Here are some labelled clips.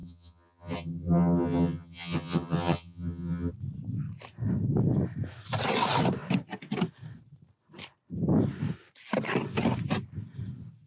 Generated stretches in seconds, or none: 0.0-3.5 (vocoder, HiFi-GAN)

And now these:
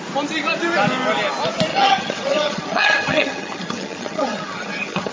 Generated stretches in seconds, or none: 1.7-5.1 (vocoder, HiFi-GAN)

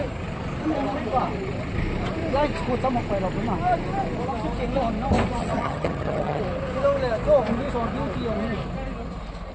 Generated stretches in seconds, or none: 5.4-6.4 (vocoder, HiFi-GAN)